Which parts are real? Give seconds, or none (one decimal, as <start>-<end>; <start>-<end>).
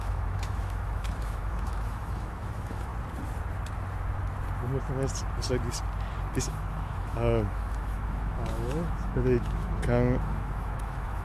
2.9-6.4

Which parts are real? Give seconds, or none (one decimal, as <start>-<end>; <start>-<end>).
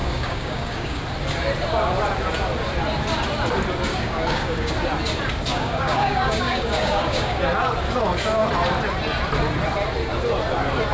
1.0-3.9; 4.7-5.5; 7.4-10.9